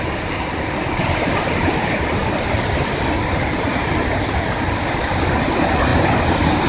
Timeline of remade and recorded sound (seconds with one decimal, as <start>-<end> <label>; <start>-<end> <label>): 0.0-6.7 recorded